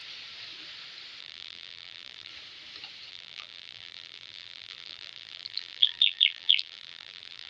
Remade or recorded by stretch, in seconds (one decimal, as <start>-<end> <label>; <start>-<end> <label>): 0.0-1.2 recorded; 1.2-2.3 remade; 2.3-3.1 recorded; 3.1-7.5 remade